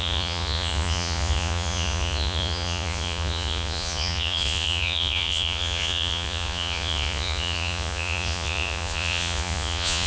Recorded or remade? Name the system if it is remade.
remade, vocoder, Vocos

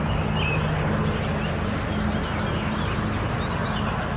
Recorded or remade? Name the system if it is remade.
recorded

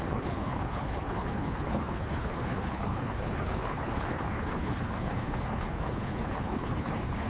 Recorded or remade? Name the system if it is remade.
remade, codec, HILCodec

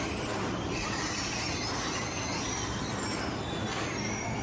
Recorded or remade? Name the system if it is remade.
recorded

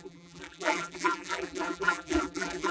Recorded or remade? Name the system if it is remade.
remade, vocoder, BigVGAN v2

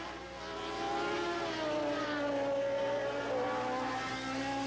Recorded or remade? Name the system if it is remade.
recorded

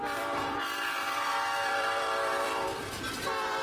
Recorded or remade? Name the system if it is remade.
remade, vocoder, BigVGAN v2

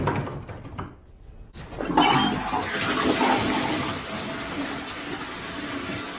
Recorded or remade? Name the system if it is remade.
recorded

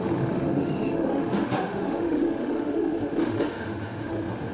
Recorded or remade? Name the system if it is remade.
remade, autoencoder, DAC-VAE